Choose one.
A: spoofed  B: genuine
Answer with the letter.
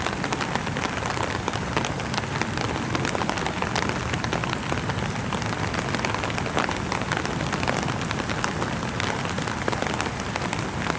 B